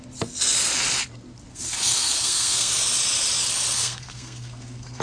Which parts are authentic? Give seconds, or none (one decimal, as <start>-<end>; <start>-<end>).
0.0-1.5; 2.7-3.8